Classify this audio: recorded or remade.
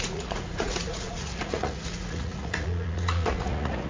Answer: remade